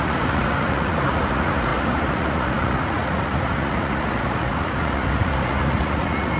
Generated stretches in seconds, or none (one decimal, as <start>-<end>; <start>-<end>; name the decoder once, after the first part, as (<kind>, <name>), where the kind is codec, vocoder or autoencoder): 0.0-6.4 (vocoder, Vocos)